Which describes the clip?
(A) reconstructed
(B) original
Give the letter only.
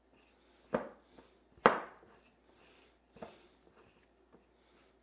B